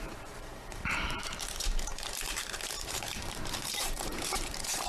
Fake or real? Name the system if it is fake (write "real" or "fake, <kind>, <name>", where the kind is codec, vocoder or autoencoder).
fake, vocoder, BigVGAN v2